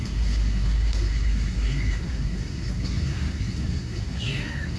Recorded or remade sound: remade